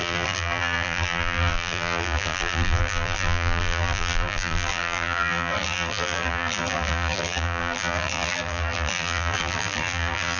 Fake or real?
fake